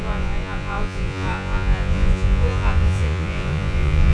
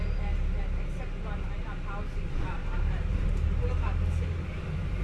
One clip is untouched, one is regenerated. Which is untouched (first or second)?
second